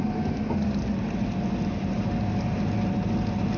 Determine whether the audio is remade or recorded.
recorded